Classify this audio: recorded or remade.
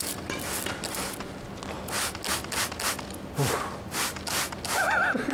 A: recorded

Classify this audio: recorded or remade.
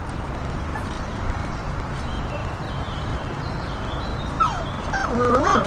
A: recorded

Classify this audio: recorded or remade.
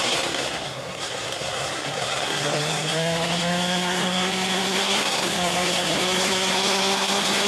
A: remade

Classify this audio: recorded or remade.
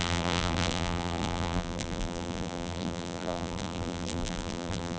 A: remade